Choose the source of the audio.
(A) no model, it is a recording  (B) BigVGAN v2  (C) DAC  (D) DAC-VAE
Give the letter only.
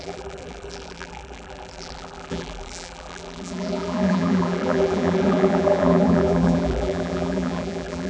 B